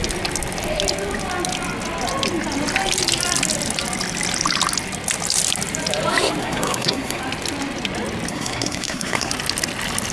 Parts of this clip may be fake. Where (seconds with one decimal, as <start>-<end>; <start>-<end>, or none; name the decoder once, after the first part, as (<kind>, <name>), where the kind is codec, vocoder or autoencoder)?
6.4-7.2 (codec, SNAC); 8.3-9.3

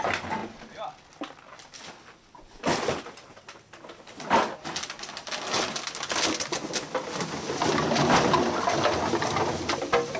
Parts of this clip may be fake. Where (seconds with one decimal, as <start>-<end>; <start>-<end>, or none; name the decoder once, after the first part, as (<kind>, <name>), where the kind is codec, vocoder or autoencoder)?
none

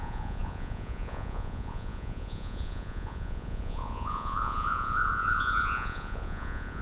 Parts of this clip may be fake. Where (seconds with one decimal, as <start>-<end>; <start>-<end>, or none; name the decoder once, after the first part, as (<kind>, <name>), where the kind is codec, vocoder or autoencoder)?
0.0-6.8 (vocoder, Vocos)

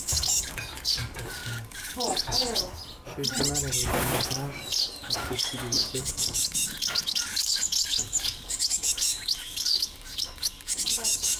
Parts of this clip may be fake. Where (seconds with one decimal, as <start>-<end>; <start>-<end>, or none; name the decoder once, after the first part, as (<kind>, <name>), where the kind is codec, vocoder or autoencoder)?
0.0-2.8 (codec, DAC); 4.0-11.4

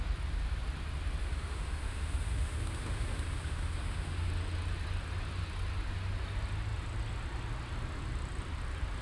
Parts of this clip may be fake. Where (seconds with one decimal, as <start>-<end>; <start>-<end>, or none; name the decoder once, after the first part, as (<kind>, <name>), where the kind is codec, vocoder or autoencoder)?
1.2-4.3 (autoencoder, DAC-VAE)

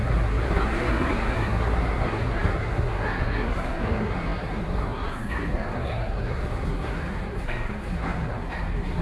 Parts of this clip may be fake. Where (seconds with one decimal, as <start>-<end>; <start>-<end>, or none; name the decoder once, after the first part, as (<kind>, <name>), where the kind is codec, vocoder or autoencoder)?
0.0-9.0 (codec, SNAC)

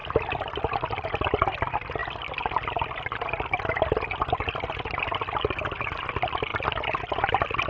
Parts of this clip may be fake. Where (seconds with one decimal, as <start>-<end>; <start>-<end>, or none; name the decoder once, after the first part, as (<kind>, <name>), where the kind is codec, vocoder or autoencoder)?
none